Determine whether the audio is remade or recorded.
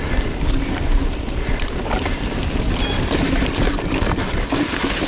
recorded